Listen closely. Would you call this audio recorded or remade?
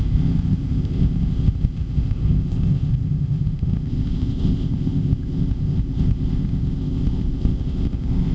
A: remade